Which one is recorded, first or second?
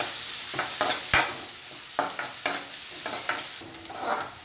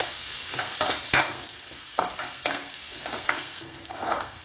first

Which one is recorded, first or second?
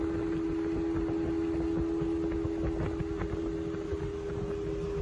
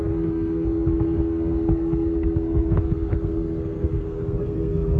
first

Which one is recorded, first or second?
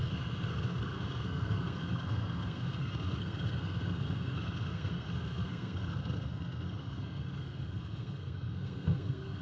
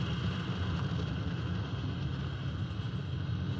second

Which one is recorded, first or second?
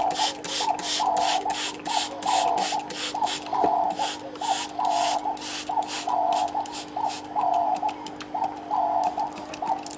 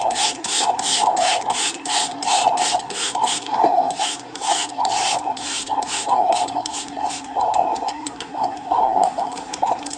first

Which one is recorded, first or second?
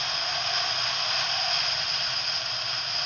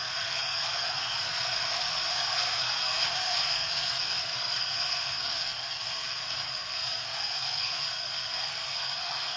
first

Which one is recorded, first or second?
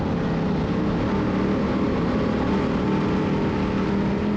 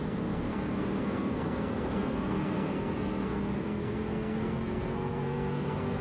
first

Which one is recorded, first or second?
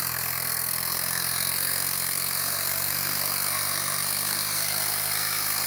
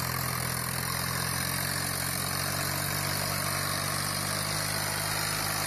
second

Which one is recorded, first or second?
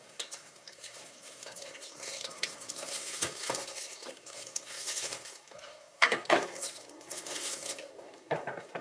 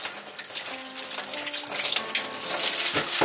second